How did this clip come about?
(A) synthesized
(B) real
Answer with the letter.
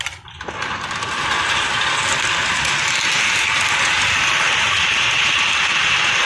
B